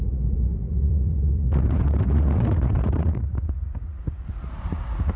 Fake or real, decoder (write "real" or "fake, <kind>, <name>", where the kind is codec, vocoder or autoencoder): fake, vocoder, Vocos